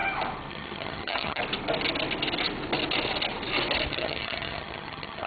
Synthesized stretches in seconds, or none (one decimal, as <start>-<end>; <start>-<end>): 0.5-1.4; 3.9-5.3